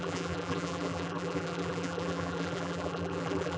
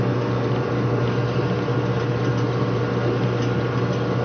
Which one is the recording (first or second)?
second